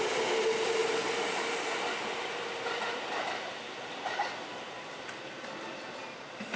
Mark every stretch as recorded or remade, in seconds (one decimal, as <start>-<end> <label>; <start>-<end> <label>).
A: 0.0-6.6 recorded